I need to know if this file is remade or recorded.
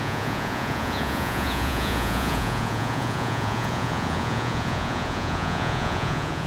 remade